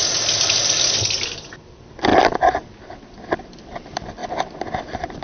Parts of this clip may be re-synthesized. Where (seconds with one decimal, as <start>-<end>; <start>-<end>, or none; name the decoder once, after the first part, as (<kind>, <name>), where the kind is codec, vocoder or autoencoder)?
1.6-2.1 (vocoder, BigVGAN v2); 3.4-4.2; 4.8-5.2